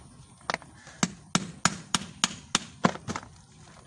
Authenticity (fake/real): real